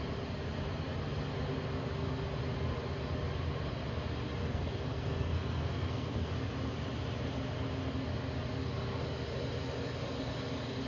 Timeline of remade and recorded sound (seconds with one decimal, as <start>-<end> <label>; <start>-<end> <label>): 0.0-4.4 recorded; 4.4-6.3 remade; 6.3-10.9 recorded